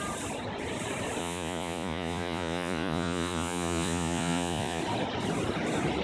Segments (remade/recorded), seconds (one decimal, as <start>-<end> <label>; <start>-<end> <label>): 0.0-1.2 recorded; 1.2-4.8 remade; 4.8-6.0 recorded